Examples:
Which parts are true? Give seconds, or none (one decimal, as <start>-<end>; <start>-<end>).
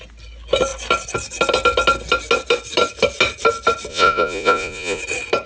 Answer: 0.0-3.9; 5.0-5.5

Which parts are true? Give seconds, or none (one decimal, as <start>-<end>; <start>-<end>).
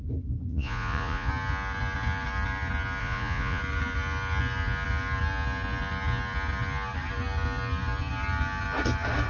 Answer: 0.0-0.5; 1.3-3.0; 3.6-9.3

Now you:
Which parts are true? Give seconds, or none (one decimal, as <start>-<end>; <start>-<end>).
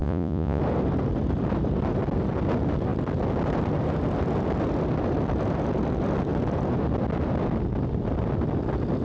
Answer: 0.6-9.0